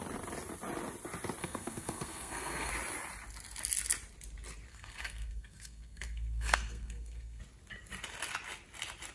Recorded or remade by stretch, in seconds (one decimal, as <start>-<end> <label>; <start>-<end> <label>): 0.0-1.4 recorded; 1.4-2.7 remade; 2.7-4.7 recorded; 4.7-7.4 remade; 7.4-9.1 recorded